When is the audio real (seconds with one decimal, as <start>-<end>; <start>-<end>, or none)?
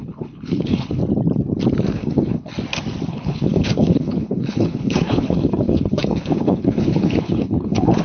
1.0-1.9; 2.5-3.1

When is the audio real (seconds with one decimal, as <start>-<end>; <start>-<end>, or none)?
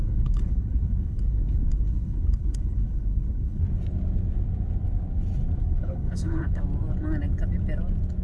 3.6-5.6; 6.6-8.2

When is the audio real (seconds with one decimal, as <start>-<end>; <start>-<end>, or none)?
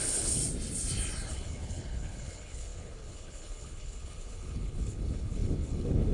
0.4-1.3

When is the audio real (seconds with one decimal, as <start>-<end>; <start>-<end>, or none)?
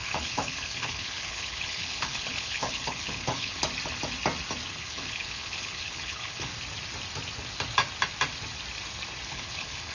3.6-4.7; 6.5-9.3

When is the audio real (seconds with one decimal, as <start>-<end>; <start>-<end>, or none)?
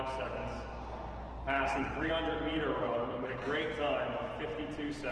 0.0-1.4; 2.1-2.8; 3.4-5.1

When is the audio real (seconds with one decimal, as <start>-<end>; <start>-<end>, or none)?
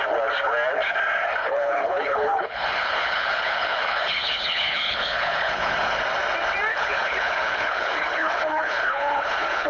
0.0-1.4; 6.0-6.7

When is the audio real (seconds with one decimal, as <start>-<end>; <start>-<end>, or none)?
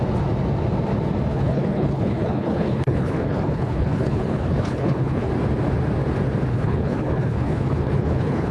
0.0-1.3; 5.3-6.5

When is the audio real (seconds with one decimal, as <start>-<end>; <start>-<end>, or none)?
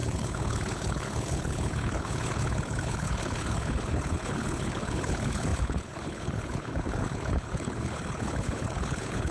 none